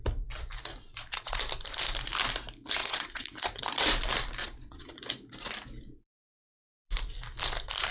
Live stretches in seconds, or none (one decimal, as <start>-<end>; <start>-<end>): 0.0-0.7; 1.4-2.8; 3.6-4.4; 5.0-7.9